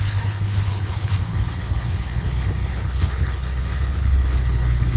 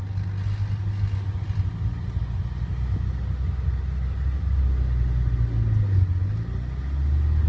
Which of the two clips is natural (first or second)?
second